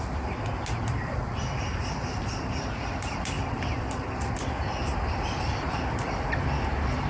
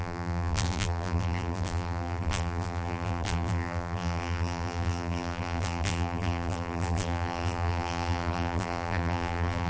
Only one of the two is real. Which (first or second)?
first